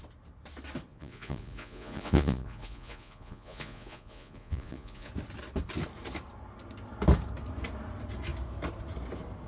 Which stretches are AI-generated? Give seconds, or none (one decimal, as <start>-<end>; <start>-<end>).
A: 0.9-5.1